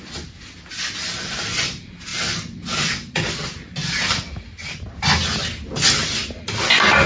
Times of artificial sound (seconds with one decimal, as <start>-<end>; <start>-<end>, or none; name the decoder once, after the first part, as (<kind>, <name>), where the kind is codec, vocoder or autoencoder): none